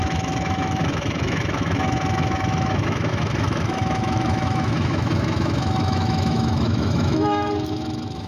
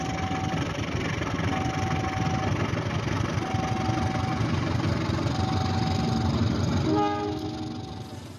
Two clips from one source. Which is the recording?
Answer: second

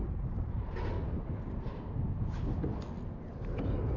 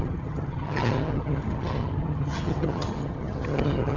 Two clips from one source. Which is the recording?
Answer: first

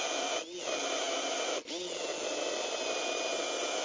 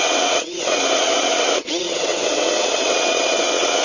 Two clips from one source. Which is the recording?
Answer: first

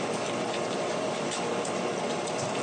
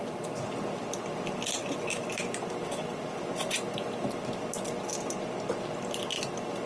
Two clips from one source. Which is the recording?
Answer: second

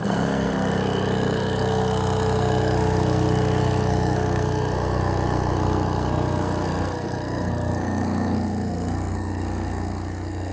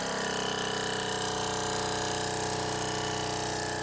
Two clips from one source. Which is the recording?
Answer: second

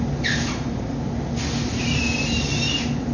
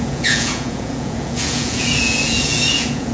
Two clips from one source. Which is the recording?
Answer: first